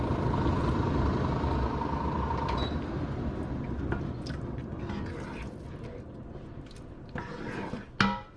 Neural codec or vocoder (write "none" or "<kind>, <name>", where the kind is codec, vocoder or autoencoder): none